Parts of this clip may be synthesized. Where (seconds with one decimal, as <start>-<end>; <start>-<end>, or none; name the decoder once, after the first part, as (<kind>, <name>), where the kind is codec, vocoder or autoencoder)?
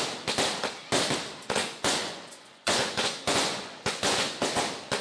1.6-4.6 (vocoder, Vocos)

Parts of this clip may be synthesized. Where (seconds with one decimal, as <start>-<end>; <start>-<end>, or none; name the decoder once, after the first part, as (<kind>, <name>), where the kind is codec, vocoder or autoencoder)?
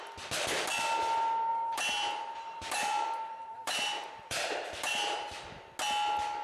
1.5-5.3 (vocoder, BigVGAN v2)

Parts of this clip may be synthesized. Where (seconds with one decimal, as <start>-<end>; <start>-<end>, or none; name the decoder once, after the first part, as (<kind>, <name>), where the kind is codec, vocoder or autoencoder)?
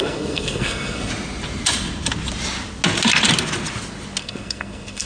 0.0-1.1 (codec, SNAC); 4.2-5.1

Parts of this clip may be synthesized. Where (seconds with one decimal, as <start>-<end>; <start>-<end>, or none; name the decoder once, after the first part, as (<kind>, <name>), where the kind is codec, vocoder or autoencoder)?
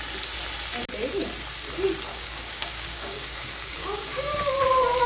2.1-4.5 (codec, DAC)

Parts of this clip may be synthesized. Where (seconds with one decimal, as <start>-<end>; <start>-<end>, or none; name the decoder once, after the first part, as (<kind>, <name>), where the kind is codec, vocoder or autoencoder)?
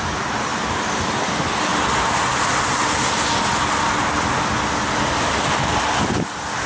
none